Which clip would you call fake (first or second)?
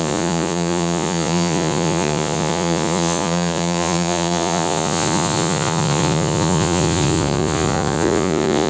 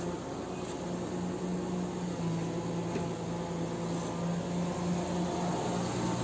first